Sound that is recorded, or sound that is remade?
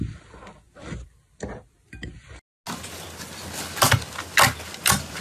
recorded